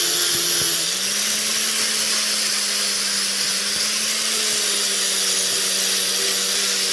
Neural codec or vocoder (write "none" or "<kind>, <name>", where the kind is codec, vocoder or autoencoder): none